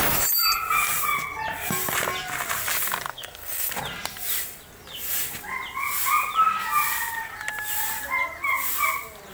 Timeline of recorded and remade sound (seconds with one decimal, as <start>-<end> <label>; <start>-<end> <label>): 0.0-3.1 recorded; 3.1-3.7 remade; 3.7-9.3 recorded